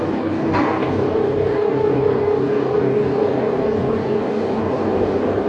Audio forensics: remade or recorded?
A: remade